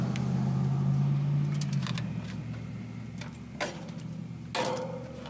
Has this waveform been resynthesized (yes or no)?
no